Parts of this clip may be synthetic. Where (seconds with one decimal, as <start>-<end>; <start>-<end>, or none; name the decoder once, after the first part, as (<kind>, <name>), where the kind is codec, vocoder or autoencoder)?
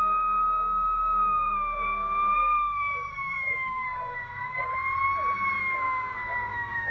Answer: 0.0-4.7 (codec, SNAC); 5.6-6.9